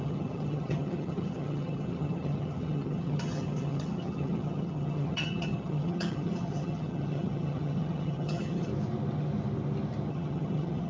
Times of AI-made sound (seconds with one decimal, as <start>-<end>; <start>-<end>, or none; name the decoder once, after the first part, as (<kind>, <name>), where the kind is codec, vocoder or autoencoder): 0.0-8.7 (vocoder, HiFi-GAN); 10.1-10.9